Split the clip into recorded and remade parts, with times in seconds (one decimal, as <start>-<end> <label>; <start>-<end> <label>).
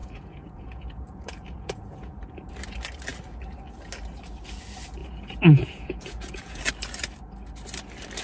0.0-2.5 remade; 2.5-5.0 recorded; 5.0-6.6 remade; 6.6-8.2 recorded